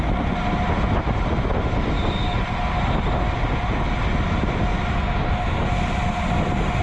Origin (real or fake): real